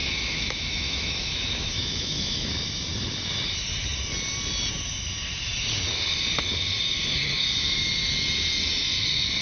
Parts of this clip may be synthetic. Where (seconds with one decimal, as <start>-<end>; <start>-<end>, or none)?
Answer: 0.0-2.5